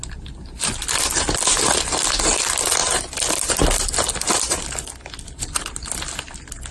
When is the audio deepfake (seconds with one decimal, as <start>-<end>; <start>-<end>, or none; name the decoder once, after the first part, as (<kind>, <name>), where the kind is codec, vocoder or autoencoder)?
none